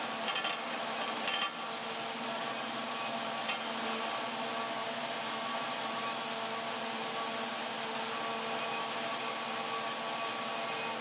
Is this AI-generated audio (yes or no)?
no